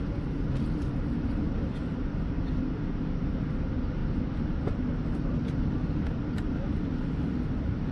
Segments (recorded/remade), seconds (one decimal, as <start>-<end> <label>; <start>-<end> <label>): 0.0-7.9 recorded